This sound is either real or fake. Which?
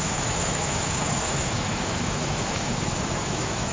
fake